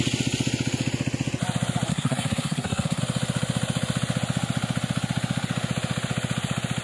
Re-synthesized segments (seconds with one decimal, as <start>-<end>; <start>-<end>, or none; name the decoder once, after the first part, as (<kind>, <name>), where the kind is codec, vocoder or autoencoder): 1.9-3.0 (codec, SNAC)